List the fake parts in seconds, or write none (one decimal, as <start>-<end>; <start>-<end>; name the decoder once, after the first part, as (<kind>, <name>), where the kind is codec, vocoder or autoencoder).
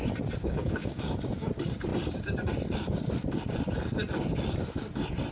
0.4-1.0 (codec, DAC)